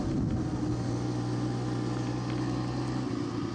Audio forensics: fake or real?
real